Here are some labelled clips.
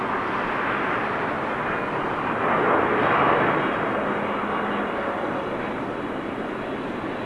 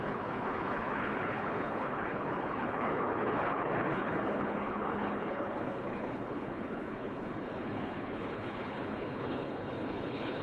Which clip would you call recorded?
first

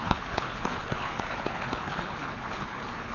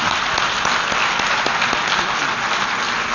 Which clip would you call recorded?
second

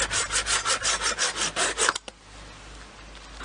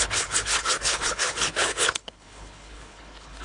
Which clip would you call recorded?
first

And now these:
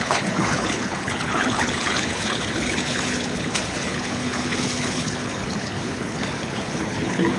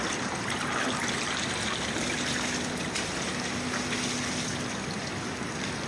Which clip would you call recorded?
second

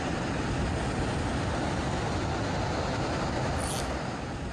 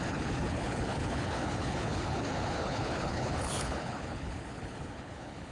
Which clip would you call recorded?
first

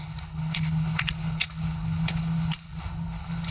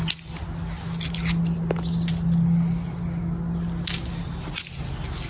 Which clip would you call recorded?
second